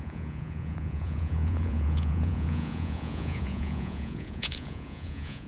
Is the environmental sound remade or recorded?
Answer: remade